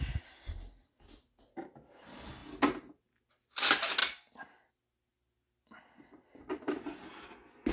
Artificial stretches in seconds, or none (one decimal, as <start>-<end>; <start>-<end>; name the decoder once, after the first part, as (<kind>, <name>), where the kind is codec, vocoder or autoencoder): none